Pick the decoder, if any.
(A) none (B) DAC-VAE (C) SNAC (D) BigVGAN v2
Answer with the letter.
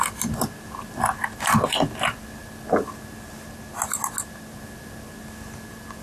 A